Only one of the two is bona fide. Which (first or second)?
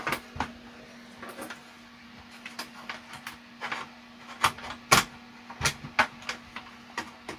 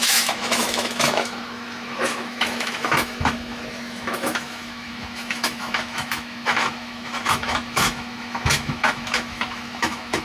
first